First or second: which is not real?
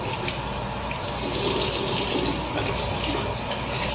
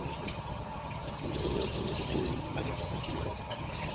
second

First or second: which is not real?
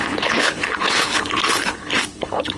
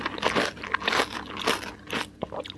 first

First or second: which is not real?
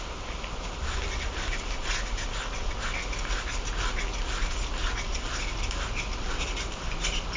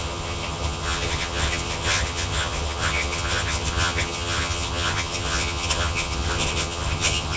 second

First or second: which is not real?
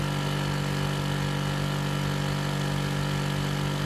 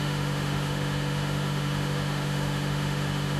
second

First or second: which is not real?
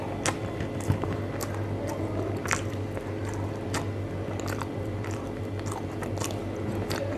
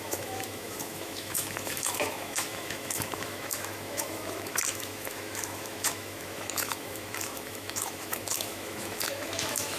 second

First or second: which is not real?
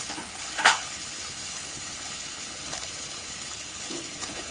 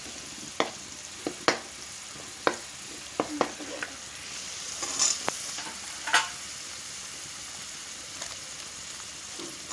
first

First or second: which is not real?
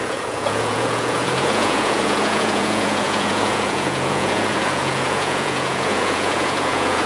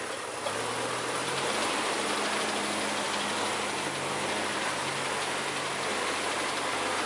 first